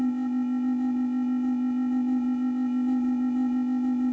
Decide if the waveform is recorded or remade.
remade